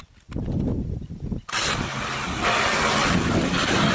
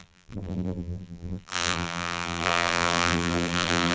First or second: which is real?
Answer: first